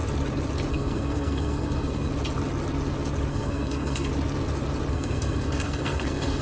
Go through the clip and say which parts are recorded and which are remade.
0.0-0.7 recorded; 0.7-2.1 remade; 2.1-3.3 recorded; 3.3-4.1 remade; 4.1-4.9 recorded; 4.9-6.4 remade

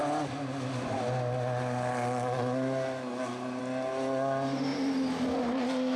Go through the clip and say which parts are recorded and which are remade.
0.0-6.0 recorded

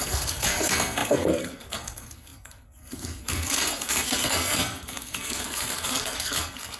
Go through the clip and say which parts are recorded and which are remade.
0.0-6.8 remade

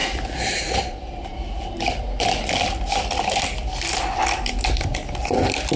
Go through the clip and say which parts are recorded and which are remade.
0.0-5.8 recorded

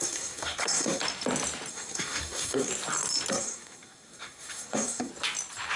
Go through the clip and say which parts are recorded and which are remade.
0.0-1.0 remade; 1.0-1.7 recorded; 1.7-2.7 remade; 2.7-3.3 recorded; 3.3-5.1 remade; 5.1-5.8 recorded